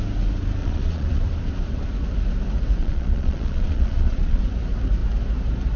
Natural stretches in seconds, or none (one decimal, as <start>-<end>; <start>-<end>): 0.0-0.6; 1.2-2.8; 4.4-5.8